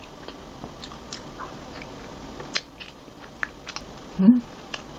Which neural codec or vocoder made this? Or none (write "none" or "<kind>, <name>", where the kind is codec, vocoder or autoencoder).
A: none